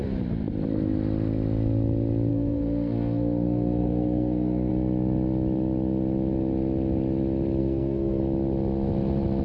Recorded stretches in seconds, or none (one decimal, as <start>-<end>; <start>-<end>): 0.0-2.3; 4.7-7.6; 8.2-9.4